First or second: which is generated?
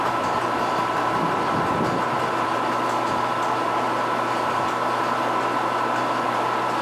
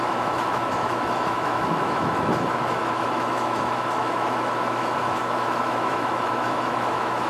second